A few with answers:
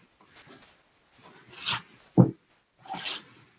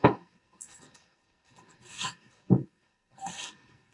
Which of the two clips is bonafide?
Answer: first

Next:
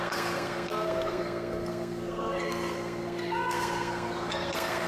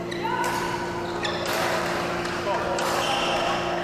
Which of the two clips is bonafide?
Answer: second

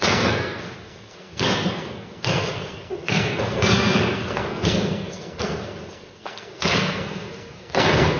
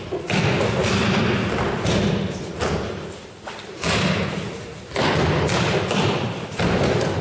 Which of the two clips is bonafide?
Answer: second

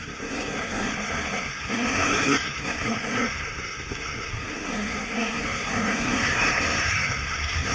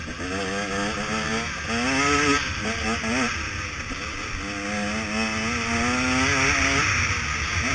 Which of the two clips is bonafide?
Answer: second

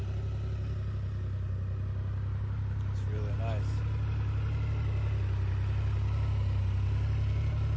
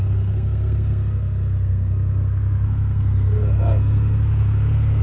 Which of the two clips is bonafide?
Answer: first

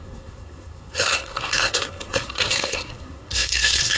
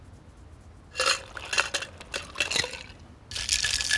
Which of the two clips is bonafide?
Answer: second